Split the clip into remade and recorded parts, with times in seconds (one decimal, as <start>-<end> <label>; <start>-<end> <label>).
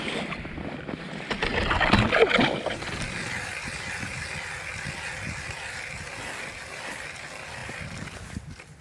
0.0-8.8 recorded